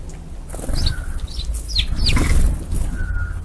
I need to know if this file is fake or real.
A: real